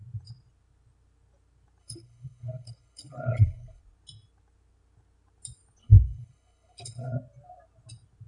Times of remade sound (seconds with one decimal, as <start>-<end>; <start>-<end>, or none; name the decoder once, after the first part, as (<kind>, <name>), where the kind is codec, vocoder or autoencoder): 1.8-3.8 (codec, HILCodec); 5.8-7.1

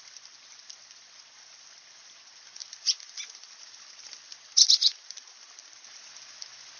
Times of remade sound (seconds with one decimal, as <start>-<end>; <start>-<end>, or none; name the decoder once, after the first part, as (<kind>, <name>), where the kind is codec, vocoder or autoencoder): none